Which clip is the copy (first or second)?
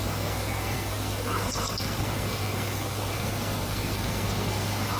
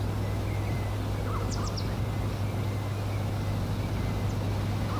first